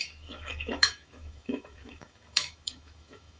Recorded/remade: remade